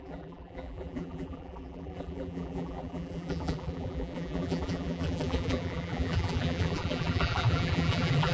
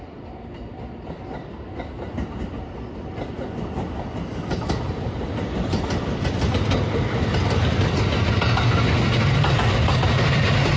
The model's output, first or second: first